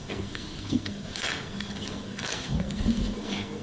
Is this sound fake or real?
fake